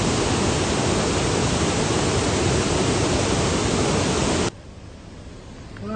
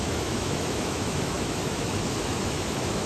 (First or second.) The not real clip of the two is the second